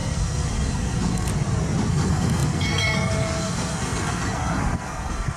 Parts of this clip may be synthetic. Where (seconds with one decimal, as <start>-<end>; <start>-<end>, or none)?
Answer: 0.0-1.3; 1.9-5.4